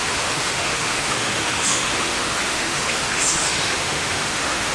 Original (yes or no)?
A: no